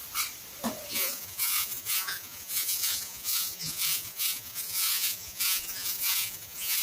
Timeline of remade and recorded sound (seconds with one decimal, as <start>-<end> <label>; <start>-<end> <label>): 0.0-0.9 recorded; 0.9-6.8 remade